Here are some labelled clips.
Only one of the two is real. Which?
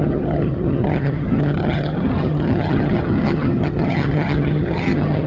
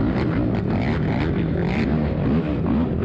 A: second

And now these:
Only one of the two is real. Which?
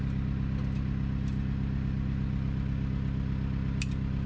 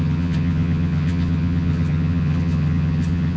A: first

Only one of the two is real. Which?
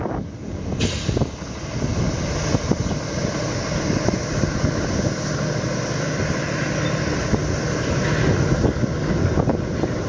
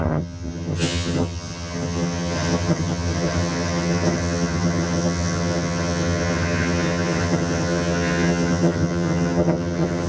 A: first